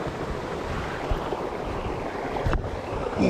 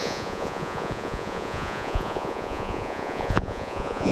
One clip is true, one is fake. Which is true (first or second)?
first